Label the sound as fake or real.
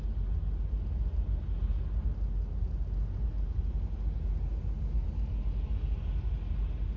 real